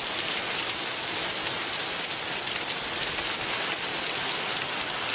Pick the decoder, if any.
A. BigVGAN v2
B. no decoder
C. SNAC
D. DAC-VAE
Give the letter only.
B